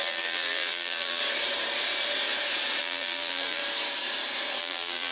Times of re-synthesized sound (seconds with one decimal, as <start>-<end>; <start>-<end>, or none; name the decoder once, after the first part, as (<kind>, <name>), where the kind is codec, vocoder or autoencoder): 0.0-1.2 (vocoder, BigVGAN v2); 2.8-3.6; 4.6-5.1